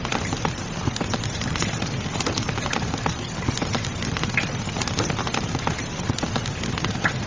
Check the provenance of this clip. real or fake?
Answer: fake